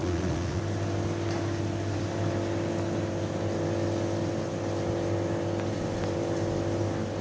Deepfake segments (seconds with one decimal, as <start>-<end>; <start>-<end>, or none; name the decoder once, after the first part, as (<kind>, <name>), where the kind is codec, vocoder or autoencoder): 0.0-0.6 (vocoder, Vocos)